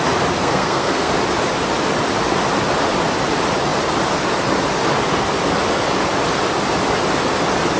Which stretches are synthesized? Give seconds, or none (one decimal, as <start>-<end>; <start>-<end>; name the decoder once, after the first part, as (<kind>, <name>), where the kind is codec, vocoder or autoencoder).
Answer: 0.4-1.1 (codec, SNAC)